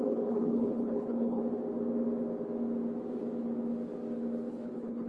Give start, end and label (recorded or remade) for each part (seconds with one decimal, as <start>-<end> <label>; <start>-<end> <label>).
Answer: 0.0-1.4 remade; 1.4-4.5 recorded; 4.5-5.1 remade